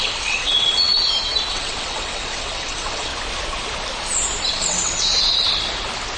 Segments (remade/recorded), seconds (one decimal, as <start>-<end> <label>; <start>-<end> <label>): 0.0-0.9 remade; 0.9-1.5 recorded; 1.5-3.1 remade; 3.1-4.5 recorded; 4.5-5.1 remade; 5.1-6.2 recorded